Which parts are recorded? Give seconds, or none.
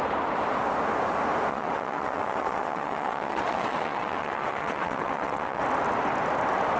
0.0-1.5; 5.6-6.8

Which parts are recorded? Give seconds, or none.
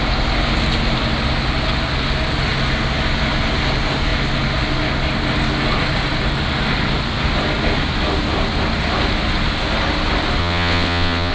0.0-10.4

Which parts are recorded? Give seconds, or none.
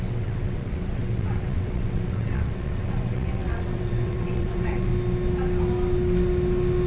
4.9-6.9